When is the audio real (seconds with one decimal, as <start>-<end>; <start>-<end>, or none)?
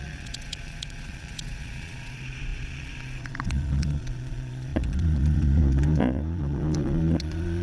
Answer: none